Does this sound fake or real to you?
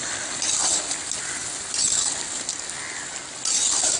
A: real